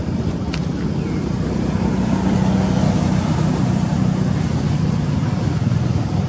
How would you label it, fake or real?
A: real